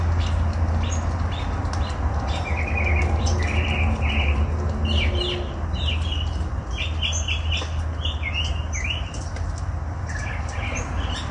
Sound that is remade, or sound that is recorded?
recorded